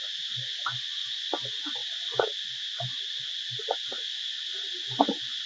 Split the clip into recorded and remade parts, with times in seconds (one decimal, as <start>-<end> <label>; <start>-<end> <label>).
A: 0.0-5.5 recorded